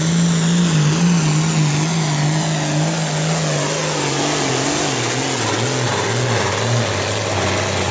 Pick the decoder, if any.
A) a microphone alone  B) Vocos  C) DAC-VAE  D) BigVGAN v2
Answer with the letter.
A